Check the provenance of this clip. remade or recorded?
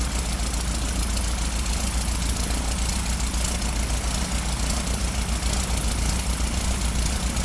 recorded